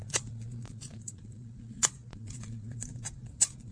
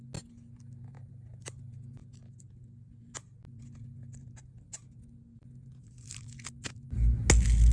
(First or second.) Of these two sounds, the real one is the second